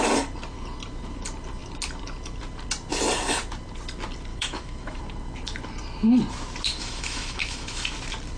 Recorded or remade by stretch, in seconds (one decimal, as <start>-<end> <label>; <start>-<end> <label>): 0.0-4.3 recorded; 4.3-5.0 remade; 5.0-6.7 recorded; 6.7-7.9 remade; 7.9-8.4 recorded